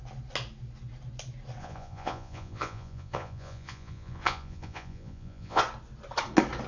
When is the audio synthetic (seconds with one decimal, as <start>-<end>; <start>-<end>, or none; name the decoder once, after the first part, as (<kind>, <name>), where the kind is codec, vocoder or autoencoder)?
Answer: 1.6-5.6 (vocoder, Vocos)